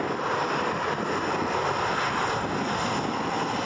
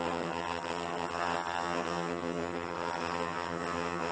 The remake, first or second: second